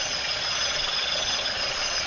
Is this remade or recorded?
remade